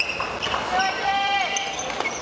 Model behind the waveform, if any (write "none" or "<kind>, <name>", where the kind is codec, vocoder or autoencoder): vocoder, BigVGAN v2